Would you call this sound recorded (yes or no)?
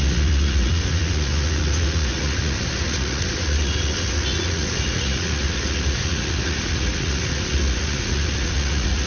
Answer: no